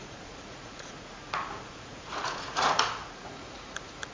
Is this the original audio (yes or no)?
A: no